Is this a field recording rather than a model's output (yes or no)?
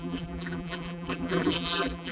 no